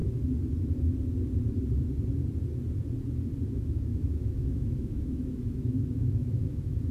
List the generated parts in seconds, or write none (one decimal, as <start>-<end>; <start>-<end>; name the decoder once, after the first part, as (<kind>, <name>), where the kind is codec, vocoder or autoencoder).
3.5-6.9 (autoencoder, DAC-VAE)